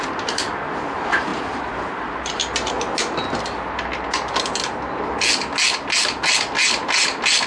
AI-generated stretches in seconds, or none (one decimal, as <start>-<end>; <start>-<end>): none